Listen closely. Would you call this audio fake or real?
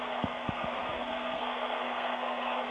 fake